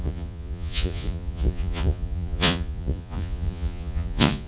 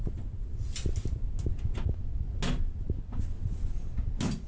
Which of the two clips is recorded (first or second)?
second